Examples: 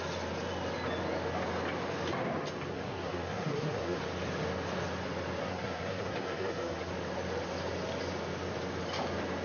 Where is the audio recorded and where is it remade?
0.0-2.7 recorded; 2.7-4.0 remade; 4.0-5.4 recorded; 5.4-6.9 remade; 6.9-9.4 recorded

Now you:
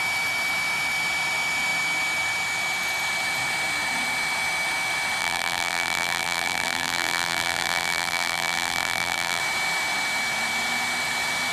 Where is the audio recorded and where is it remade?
0.0-5.2 recorded; 5.2-9.4 remade; 9.4-11.5 recorded

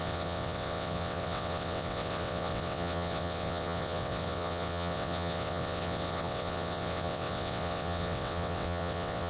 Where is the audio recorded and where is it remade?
0.0-9.3 remade

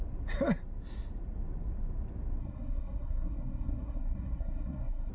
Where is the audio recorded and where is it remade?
0.0-2.4 recorded; 2.4-5.1 remade

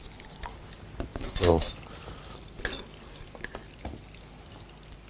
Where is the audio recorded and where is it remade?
0.0-1.1 recorded; 1.1-2.6 remade; 2.6-3.6 recorded; 3.6-4.5 remade; 4.5-5.1 recorded

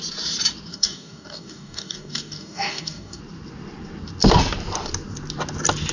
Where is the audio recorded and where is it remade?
0.0-0.7 recorded; 0.7-3.2 remade; 3.2-5.9 recorded